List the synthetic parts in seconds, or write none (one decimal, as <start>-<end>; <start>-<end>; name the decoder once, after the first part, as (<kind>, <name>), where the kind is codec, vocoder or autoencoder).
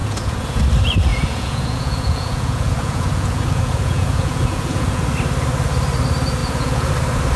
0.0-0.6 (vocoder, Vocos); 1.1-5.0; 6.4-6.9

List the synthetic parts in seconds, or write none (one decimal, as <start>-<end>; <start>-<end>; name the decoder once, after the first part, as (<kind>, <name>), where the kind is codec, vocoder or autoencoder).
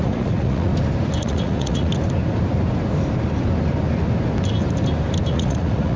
0.0-0.7 (vocoder, Vocos); 1.2-1.9; 5.3-6.0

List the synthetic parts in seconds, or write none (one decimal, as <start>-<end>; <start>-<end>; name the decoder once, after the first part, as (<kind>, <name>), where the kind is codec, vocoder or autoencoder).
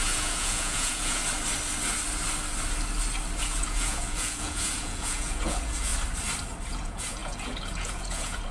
0.0-1.2 (vocoder, Vocos); 3.4-5.9; 6.7-8.5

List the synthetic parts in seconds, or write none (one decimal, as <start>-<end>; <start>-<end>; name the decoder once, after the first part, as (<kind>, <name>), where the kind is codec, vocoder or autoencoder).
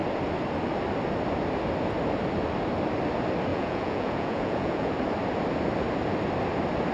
3.5-4.9 (vocoder, Vocos)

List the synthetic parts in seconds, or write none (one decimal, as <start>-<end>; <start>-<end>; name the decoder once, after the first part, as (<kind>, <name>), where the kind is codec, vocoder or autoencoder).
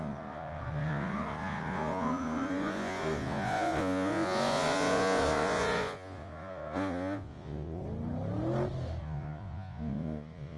0.0-7.8 (vocoder, Vocos); 9.0-10.6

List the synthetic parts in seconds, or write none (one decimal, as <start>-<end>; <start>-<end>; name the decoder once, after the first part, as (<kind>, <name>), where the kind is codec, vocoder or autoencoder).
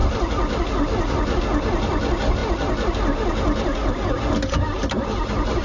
none